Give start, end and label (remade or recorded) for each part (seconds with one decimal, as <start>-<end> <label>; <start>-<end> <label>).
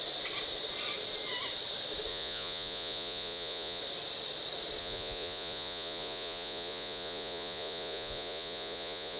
0.0-2.1 recorded; 2.1-3.8 remade; 3.8-4.8 recorded; 4.8-9.2 remade